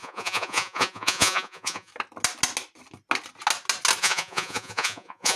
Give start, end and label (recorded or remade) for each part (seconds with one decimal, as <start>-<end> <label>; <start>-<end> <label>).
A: 0.0-1.9 remade; 1.9-4.0 recorded; 4.0-5.4 remade

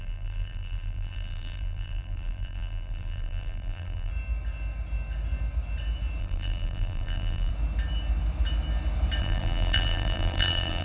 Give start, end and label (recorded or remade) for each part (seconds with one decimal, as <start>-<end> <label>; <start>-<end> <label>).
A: 0.0-4.1 remade; 4.1-6.2 recorded; 6.2-7.5 remade; 7.5-9.2 recorded; 9.2-10.8 remade

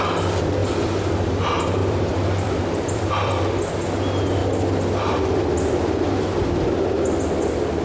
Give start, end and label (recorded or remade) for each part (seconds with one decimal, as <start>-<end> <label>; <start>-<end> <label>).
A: 0.0-0.6 recorded; 0.6-1.3 remade; 1.3-1.8 recorded; 1.8-3.6 remade; 3.6-7.8 recorded